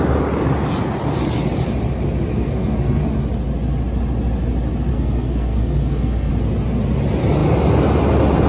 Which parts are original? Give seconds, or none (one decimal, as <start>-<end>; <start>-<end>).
0.0-2.3; 3.0-4.9; 6.3-8.5